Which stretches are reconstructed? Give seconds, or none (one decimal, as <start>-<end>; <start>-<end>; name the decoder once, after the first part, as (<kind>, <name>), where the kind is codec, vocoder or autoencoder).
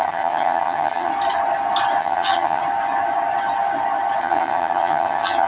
0.0-1.1 (vocoder, HiFi-GAN); 2.0-2.6; 4.2-5.5